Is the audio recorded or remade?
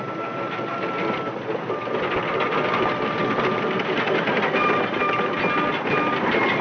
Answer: recorded